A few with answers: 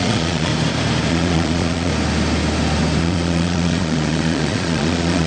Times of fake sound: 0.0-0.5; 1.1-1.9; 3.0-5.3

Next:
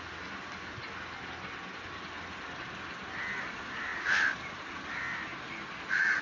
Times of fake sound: none

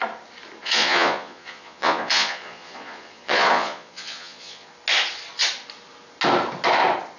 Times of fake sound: 0.6-4.7